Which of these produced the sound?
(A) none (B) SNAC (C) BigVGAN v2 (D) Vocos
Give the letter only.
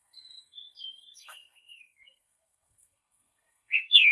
B